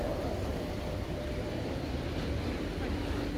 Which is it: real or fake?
real